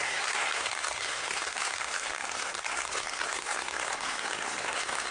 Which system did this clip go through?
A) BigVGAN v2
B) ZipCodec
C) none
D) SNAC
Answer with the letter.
D